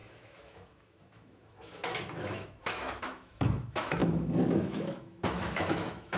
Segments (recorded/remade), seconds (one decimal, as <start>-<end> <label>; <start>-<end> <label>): 0.0-6.2 remade